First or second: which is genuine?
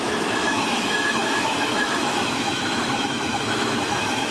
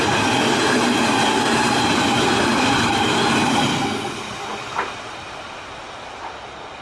second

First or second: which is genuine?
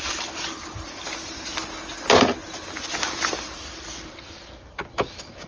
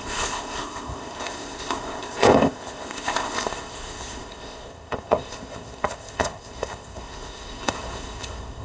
first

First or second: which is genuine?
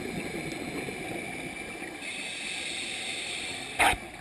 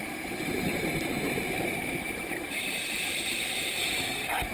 first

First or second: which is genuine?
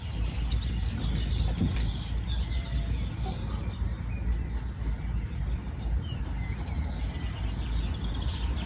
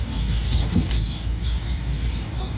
first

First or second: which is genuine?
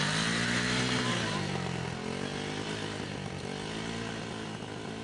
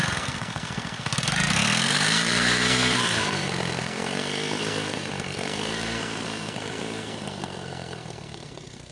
first